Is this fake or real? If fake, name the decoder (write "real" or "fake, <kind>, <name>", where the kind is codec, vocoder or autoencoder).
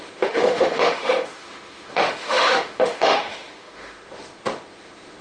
fake, autoencoder, DAC-VAE